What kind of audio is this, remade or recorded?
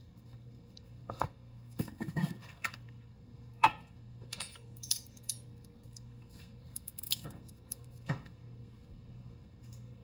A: remade